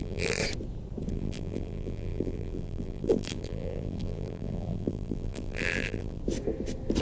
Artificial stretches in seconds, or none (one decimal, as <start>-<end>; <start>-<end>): 0.0-0.4; 1.1-6.2